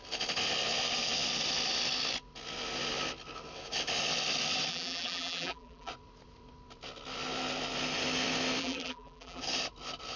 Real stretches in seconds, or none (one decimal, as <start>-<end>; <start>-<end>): 0.0-4.7; 5.9-8.6; 9.4-10.2